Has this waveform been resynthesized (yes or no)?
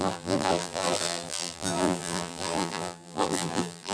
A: yes